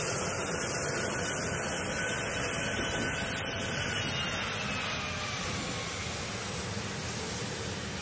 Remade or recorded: recorded